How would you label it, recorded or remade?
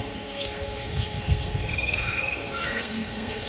remade